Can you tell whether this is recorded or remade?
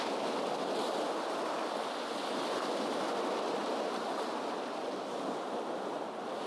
recorded